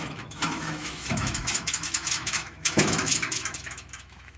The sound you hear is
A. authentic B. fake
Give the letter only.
B